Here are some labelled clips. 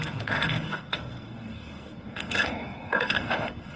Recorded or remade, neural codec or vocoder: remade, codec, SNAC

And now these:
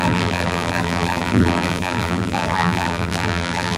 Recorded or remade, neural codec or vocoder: remade, vocoder, BigVGAN v2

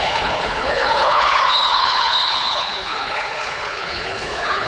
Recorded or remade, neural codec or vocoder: remade, codec, HILCodec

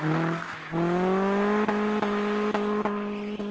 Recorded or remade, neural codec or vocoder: recorded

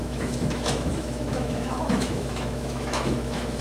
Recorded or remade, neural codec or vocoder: remade, autoencoder, DAC-VAE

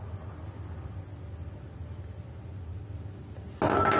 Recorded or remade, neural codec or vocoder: recorded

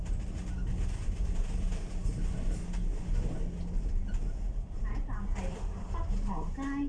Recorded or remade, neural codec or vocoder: recorded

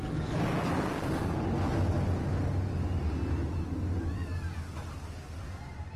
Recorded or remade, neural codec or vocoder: recorded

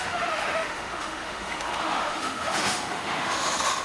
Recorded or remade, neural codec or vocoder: remade, autoencoder, DAC-VAE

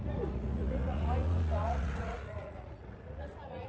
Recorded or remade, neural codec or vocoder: remade, vocoder, Vocos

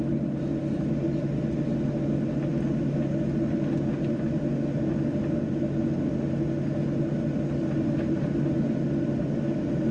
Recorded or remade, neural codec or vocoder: recorded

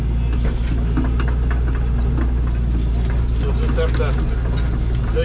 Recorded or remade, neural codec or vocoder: recorded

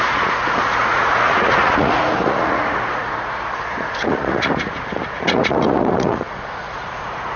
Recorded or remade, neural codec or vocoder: remade, vocoder, Vocos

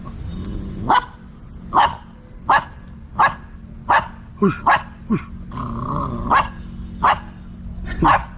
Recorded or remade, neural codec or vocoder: recorded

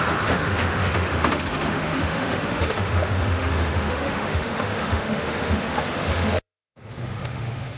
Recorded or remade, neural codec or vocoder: remade, autoencoder, DAC-VAE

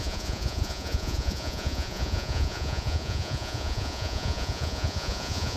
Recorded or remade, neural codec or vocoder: remade, vocoder, Vocos